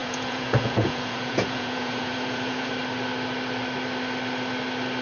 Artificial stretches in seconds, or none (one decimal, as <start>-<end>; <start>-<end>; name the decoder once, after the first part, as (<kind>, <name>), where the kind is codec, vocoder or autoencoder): 0.0-2.7 (vocoder, Vocos)